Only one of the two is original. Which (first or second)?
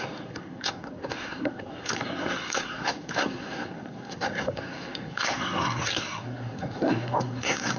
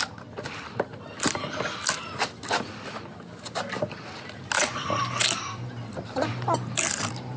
second